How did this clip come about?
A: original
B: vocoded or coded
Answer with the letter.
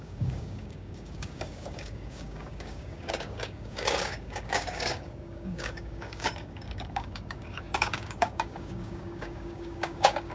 B